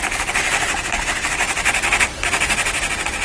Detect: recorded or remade recorded